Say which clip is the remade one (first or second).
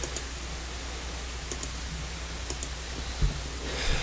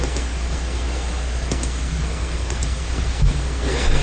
second